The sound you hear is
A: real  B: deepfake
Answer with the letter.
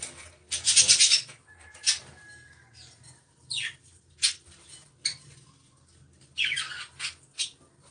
A